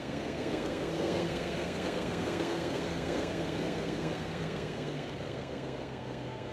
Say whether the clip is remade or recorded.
remade